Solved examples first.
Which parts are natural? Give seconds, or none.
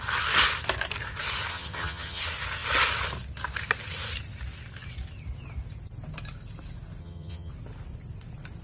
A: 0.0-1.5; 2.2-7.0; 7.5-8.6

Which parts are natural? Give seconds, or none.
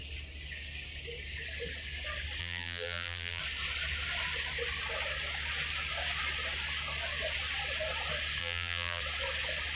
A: 0.0-2.4; 3.4-8.4; 9.0-9.8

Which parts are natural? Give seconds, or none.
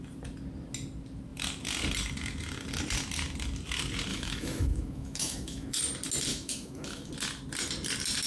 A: 0.0-4.1; 5.8-6.3; 7.1-8.3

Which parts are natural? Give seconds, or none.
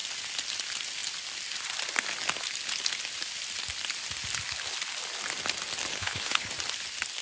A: 0.0-5.9; 6.5-7.2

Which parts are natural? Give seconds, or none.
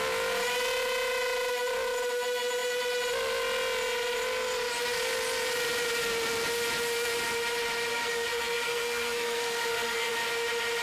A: 0.0-7.9; 10.1-10.8